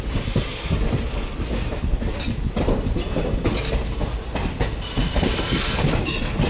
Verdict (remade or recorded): recorded